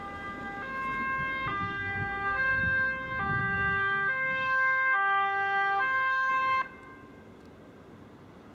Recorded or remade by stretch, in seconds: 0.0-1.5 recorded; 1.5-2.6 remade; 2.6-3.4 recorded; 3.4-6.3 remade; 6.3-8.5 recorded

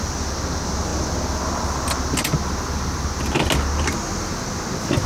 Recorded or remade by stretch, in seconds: 0.0-5.1 recorded